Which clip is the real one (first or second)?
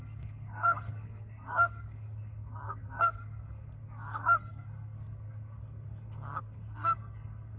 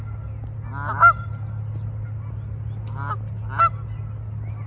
second